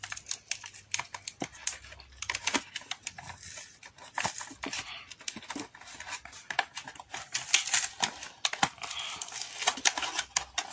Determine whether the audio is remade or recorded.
recorded